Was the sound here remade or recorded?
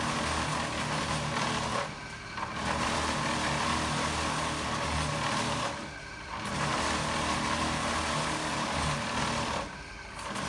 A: recorded